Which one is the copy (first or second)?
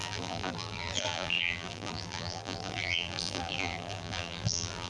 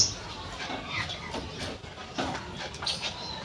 first